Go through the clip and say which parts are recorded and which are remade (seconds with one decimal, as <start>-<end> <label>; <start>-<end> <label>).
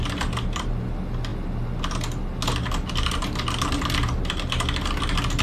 0.0-5.4 recorded